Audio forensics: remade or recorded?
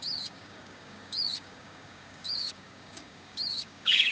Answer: remade